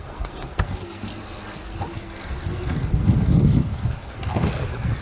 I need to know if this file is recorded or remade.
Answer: remade